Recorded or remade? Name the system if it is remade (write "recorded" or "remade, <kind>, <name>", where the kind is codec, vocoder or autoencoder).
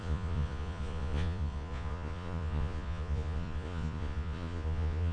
remade, vocoder, Vocos